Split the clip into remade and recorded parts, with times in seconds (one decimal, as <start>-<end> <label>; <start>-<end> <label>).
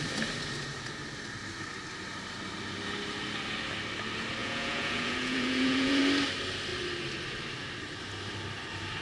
0.0-4.4 recorded; 4.4-6.0 remade; 6.0-9.0 recorded